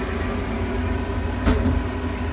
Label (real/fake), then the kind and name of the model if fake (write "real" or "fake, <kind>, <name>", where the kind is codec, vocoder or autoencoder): real